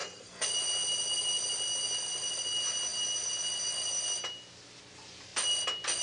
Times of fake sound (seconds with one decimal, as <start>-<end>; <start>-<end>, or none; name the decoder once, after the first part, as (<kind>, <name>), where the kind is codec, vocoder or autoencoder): 0.0-0.5 (codec, SNAC)